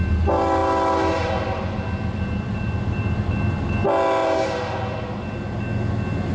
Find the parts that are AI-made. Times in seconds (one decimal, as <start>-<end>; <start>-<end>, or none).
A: none